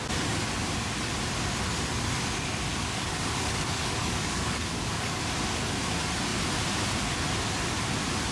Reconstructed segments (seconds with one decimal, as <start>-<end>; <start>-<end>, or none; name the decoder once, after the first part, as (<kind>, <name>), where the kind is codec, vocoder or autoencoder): 2.7-5.2 (codec, DAC)